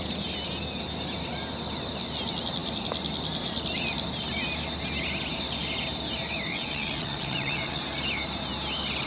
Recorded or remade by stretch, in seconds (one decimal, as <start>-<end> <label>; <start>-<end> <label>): 0.0-6.5 recorded; 6.5-7.8 remade; 7.8-9.1 recorded